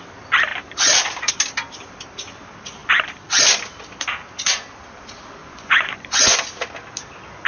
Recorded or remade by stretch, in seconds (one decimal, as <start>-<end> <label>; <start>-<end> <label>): 0.0-5.4 recorded; 5.4-6.4 remade; 6.4-7.5 recorded